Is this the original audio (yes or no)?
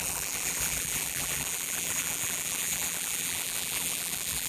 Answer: no